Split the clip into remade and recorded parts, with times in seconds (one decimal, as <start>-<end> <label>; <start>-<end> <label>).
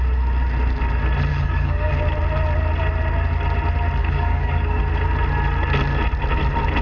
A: 0.0-1.3 recorded; 1.3-1.9 remade; 1.9-4.0 recorded; 4.0-4.8 remade; 4.8-6.8 recorded